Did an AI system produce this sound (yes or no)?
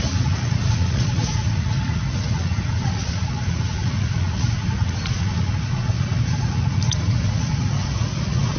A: yes